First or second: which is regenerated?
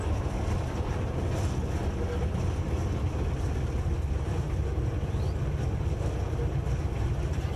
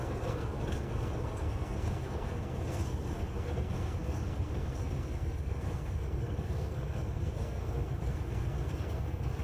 second